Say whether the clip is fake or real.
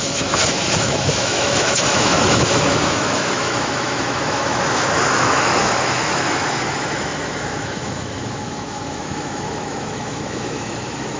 fake